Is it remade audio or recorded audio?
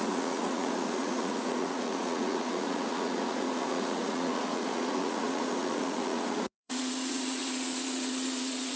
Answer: remade